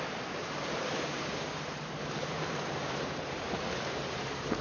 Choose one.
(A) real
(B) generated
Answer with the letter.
B